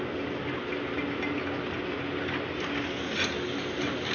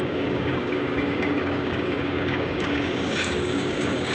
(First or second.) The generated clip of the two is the second